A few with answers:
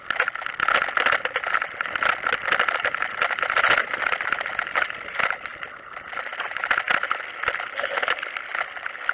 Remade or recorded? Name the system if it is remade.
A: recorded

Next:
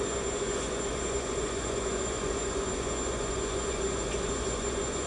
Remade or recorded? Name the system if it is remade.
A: remade, vocoder, Vocos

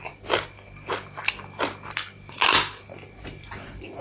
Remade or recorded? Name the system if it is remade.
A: recorded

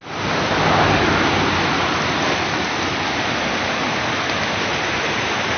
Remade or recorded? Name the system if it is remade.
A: recorded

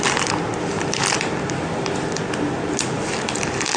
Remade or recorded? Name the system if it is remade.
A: recorded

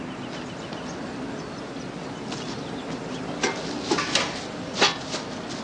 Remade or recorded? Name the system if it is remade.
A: recorded